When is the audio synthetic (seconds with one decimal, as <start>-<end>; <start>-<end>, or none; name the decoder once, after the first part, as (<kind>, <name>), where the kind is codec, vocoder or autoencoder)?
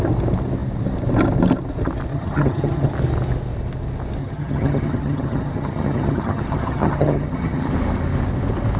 2.1-2.9 (vocoder, HiFi-GAN); 4.2-7.7